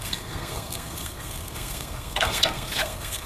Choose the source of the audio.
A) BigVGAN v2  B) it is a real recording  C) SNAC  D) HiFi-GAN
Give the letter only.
C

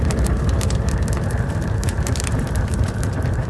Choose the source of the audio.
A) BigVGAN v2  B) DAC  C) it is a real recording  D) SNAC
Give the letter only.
A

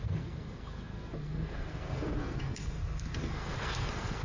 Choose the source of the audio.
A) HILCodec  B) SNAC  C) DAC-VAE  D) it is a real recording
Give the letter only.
B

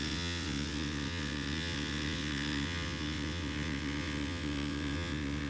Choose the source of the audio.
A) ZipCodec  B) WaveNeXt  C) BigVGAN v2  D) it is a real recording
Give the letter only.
B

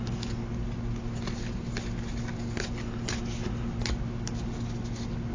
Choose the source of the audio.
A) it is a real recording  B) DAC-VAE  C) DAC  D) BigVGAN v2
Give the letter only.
A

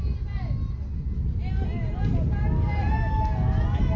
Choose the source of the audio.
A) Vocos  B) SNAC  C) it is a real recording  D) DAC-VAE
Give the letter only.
C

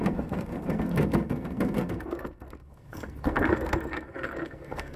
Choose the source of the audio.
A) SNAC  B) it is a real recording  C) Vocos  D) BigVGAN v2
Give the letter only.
A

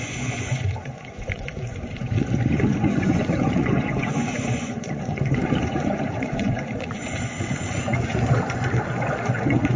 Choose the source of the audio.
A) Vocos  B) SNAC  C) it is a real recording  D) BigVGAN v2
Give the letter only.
A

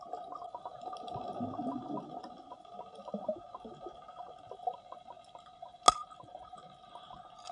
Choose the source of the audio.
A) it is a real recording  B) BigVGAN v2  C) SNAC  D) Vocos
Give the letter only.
A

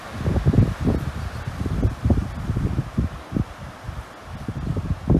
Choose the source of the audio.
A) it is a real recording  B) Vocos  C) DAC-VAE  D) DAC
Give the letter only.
A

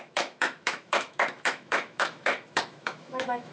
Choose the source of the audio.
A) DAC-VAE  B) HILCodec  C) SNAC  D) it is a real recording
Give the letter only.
A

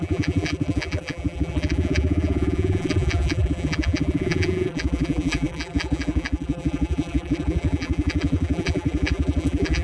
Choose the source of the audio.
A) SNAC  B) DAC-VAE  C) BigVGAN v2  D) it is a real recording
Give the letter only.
C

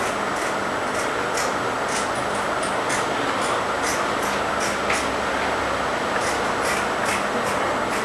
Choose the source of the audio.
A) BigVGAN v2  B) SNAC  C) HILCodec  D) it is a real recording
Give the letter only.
D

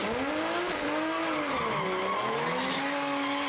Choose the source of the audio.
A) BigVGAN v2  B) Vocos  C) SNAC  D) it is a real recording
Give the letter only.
D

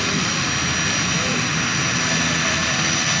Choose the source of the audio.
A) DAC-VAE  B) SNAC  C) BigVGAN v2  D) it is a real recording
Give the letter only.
D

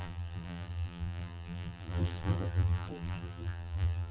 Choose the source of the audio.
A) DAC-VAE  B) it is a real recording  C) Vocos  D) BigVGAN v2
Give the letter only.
D